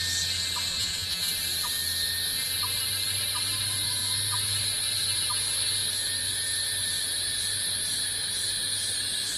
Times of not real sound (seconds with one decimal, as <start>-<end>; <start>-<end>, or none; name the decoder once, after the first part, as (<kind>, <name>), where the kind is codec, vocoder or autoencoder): 0.7-1.3 (vocoder, Vocos)